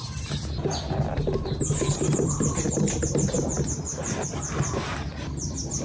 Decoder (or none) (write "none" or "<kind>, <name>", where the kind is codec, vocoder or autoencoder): none